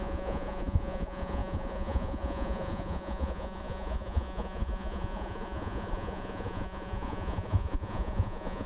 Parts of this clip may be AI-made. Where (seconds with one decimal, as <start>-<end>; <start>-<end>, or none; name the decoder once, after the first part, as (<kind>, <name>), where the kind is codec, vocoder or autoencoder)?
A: 0.0-8.7 (vocoder, Vocos)